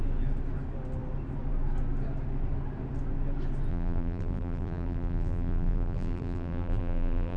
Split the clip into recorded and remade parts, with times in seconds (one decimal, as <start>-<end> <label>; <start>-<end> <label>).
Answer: 0.0-3.7 recorded; 3.7-7.4 remade